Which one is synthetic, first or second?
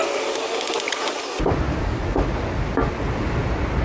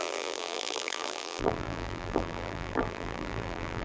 second